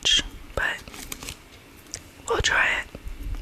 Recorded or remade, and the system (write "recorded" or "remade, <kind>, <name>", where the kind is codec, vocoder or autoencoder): recorded